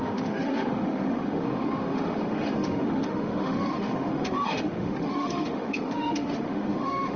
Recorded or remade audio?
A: remade